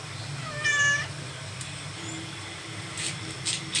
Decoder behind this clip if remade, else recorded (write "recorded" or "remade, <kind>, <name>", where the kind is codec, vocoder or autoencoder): recorded